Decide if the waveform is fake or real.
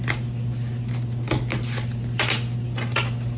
real